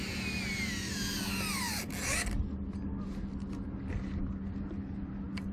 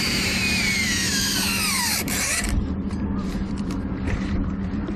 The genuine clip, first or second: first